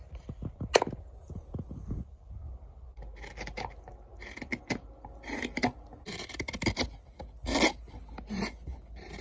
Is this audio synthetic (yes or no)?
no